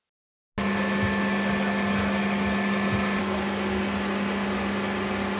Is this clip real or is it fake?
real